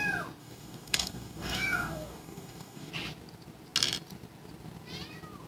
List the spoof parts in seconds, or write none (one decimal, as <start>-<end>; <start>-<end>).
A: 0.4-2.9